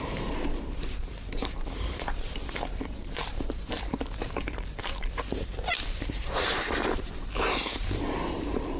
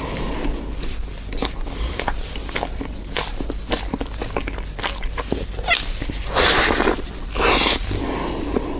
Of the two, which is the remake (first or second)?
first